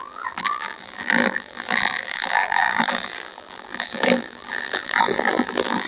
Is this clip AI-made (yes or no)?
yes